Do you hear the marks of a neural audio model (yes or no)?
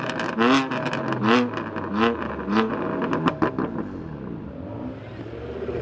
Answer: no